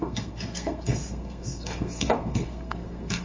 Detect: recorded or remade remade